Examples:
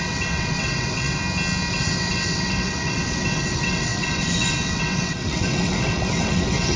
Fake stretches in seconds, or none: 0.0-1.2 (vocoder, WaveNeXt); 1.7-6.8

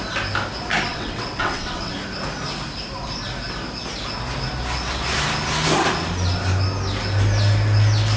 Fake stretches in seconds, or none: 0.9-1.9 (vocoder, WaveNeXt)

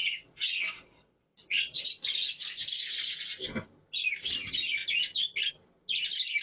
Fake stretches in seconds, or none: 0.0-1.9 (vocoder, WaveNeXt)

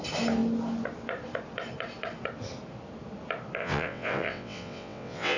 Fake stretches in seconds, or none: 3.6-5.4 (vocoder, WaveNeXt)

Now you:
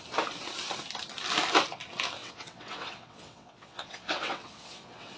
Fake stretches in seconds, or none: 2.2-5.2 (vocoder, WaveNeXt)

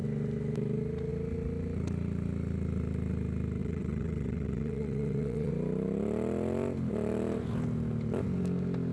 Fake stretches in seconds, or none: 3.6-5.5 (vocoder, WaveNeXt)

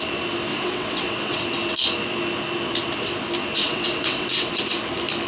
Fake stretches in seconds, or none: 0.5-1.4 (vocoder, WaveNeXt); 3.6-4.5

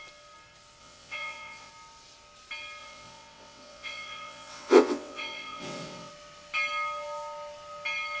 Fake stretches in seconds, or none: 0.8-1.7 (vocoder, WaveNeXt); 2.8-6.1